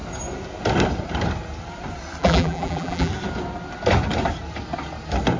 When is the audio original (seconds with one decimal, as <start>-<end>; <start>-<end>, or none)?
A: 0.0-2.2; 3.1-5.4